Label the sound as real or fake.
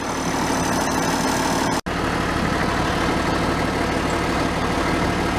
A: real